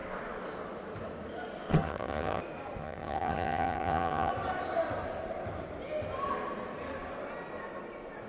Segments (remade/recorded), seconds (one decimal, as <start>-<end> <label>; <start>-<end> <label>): 0.0-1.7 recorded; 1.7-2.4 remade; 2.4-2.8 recorded; 2.8-4.3 remade; 4.3-8.3 recorded